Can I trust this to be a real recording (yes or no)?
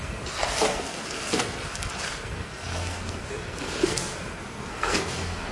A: no